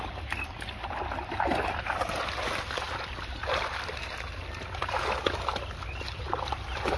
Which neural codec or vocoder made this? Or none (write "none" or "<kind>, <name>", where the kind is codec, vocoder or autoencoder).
none